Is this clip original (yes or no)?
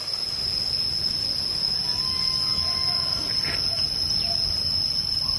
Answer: yes